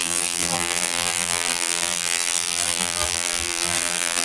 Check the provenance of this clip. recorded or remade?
remade